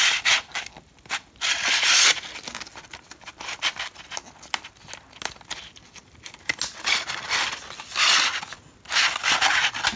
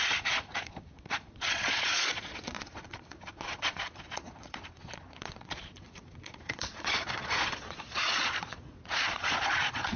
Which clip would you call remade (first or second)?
second